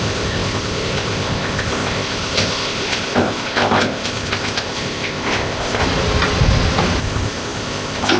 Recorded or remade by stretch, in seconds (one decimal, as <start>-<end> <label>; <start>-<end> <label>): 0.0-5.8 remade; 5.8-7.0 recorded; 7.0-8.2 remade